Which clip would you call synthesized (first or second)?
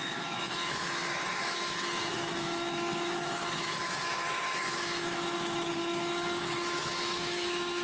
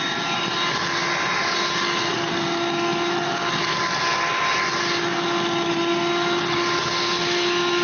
first